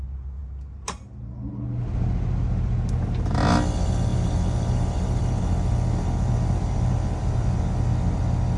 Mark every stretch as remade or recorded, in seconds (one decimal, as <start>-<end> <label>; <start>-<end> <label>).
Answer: 0.0-4.1 recorded; 4.1-7.6 remade; 7.6-8.6 recorded